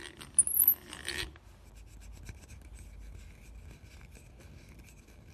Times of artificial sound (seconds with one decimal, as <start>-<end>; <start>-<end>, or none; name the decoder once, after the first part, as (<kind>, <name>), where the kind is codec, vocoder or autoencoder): none